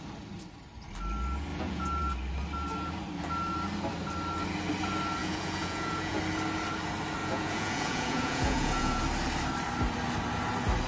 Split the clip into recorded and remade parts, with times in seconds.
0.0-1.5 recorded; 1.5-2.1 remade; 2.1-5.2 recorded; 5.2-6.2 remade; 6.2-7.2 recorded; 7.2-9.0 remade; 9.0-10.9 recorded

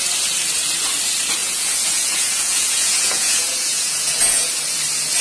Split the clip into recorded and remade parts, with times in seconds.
0.0-1.4 recorded; 1.4-4.5 remade; 4.5-5.2 recorded

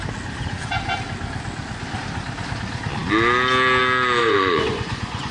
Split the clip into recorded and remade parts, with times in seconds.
0.0-4.2 recorded; 4.2-5.3 remade

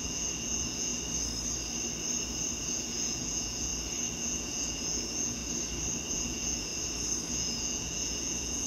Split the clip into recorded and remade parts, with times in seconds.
0.0-0.9 remade; 0.9-2.6 recorded; 2.6-3.7 remade; 3.7-4.2 recorded; 4.2-5.4 remade; 5.4-6.1 recorded; 6.1-6.7 remade; 6.7-7.3 recorded; 7.3-8.7 remade

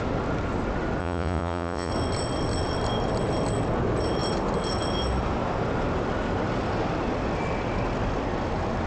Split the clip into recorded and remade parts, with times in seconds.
0.0-1.0 recorded; 1.0-1.9 remade; 1.9-8.9 recorded

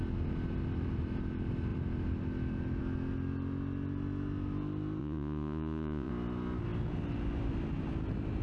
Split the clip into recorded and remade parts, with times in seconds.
0.0-5.0 recorded; 5.0-6.1 remade; 6.1-8.4 recorded

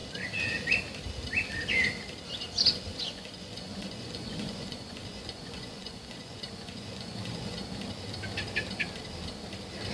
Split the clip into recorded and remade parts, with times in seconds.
0.0-2.9 recorded; 2.9-7.7 remade; 7.7-9.9 recorded

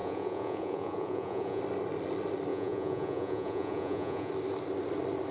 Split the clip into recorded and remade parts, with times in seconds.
0.0-1.6 remade; 1.6-2.5 recorded; 2.5-4.3 remade; 4.3-5.3 recorded